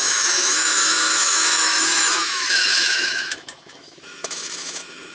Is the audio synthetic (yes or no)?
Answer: yes